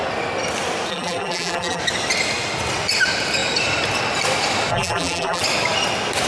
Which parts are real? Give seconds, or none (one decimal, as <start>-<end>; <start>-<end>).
0.0-0.9; 1.8-4.7; 5.4-6.3